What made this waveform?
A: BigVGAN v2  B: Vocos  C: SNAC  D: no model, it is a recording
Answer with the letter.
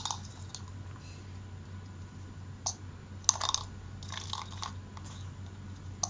D